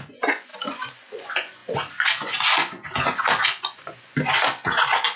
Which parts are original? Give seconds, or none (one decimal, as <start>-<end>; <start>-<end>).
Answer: none